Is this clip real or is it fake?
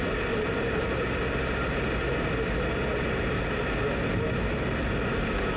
real